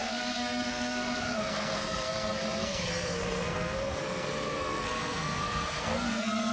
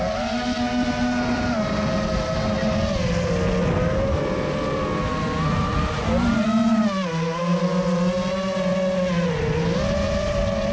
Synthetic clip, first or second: first